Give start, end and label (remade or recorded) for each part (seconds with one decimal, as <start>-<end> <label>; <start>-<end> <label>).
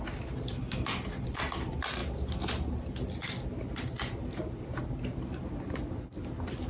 0.0-6.7 recorded